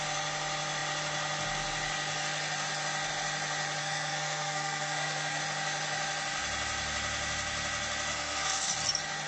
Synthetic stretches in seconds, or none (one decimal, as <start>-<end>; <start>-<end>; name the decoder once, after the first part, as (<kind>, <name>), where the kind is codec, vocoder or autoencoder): 3.8-5.4 (codec, SNAC); 8.1-8.7